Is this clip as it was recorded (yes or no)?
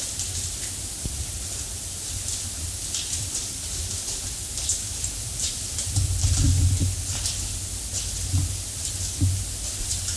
no